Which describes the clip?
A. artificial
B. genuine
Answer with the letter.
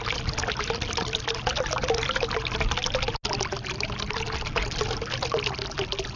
B